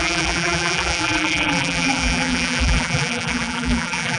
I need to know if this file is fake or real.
fake